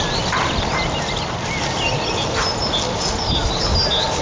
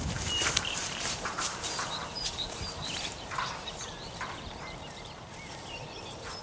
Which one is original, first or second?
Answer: first